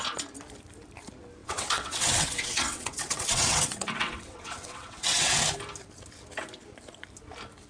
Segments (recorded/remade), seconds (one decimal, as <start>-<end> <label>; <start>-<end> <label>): 0.0-1.4 recorded; 1.4-5.4 remade; 5.4-7.7 recorded